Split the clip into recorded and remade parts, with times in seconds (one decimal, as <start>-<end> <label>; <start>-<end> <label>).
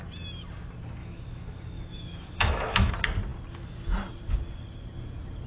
0.0-1.0 recorded; 1.0-2.9 remade; 2.9-5.5 recorded